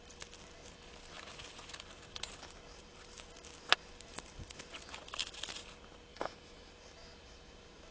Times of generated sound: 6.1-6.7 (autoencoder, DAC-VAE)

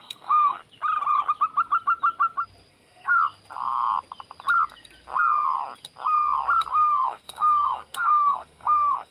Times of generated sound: 0.0-0.6 (codec, SNAC); 2.7-3.2; 6.7-9.1

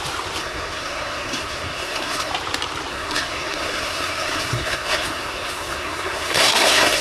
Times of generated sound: 0.4-2.3 (codec, SNAC); 2.9-7.0

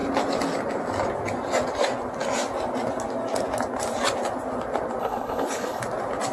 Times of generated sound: 5.0-5.8 (codec, HILCodec)

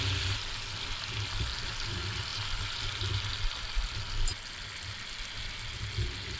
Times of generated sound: none

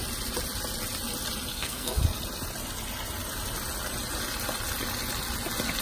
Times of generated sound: 1.5-2.0 (codec, SNAC)

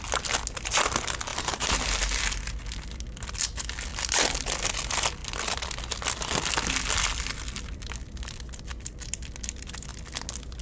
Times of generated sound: 1.3-2.1 (vocoder, BigVGAN v2)